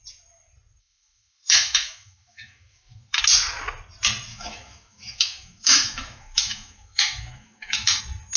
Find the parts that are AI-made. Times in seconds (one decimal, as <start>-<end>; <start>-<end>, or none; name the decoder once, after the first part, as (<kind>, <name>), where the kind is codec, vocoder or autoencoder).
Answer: 0.8-3.2 (autoencoder, DAC-VAE); 4.3-8.0